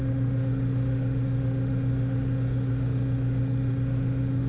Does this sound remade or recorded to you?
remade